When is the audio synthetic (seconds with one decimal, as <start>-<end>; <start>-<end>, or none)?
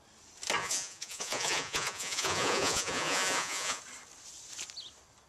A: 0.6-3.8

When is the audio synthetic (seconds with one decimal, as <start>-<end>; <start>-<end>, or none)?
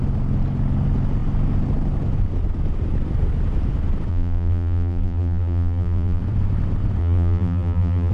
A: 4.1-6.2; 7.0-8.1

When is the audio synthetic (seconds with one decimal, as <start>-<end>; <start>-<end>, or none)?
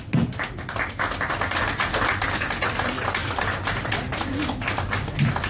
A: 3.2-3.9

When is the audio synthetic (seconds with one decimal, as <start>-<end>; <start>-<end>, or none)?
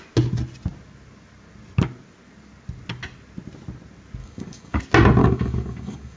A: 4.2-4.8; 5.2-6.2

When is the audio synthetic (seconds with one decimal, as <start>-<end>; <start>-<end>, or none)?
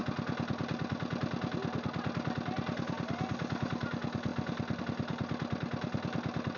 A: none